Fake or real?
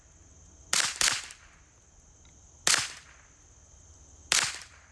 real